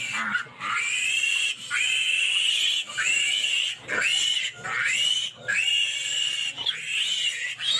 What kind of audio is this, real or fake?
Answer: real